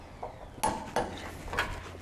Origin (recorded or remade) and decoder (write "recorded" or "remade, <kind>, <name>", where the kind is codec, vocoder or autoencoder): recorded